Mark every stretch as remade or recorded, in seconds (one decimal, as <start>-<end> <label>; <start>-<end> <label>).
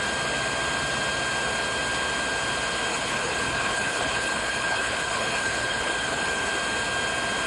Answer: 0.0-2.9 recorded; 2.9-6.5 remade; 6.5-7.5 recorded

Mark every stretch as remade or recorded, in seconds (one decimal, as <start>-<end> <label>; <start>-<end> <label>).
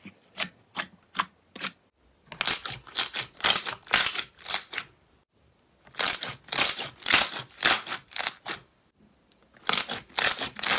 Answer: 0.0-2.9 recorded; 2.9-5.5 remade; 5.5-10.8 recorded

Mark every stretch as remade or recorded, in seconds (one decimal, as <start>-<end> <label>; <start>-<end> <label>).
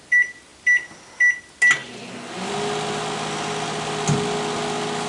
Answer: 0.0-0.5 recorded; 0.5-1.0 remade; 1.0-5.1 recorded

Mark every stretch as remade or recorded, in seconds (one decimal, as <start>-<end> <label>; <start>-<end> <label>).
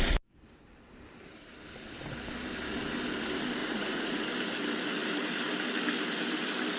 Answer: 0.0-3.6 recorded; 3.6-4.2 remade; 4.2-6.8 recorded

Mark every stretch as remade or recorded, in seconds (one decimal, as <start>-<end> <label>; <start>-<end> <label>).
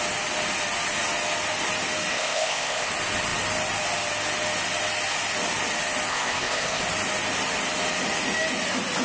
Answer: 0.0-2.1 recorded; 2.1-2.9 remade; 2.9-6.1 recorded; 6.1-6.8 remade; 6.8-9.0 recorded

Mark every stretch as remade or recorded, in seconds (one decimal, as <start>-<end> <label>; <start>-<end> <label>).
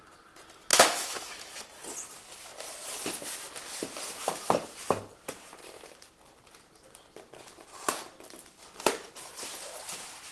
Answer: 0.0-0.7 recorded; 0.7-1.6 remade; 1.6-10.3 recorded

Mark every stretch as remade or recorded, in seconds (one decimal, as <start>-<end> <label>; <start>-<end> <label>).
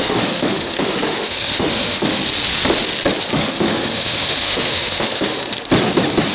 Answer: 0.0-2.2 remade; 2.2-3.2 recorded; 3.2-5.7 remade; 5.7-6.3 recorded